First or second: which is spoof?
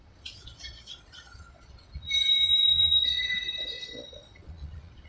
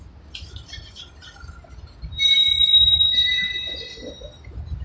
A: first